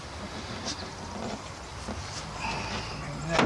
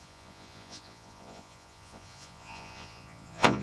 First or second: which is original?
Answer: first